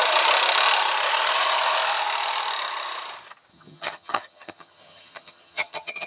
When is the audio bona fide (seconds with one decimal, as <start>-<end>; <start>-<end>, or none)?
0.0-3.5